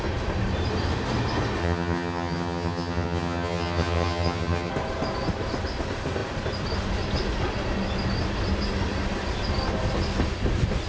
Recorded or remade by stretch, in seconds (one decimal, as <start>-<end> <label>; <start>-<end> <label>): 0.0-1.6 recorded; 1.6-4.7 remade; 4.7-10.9 recorded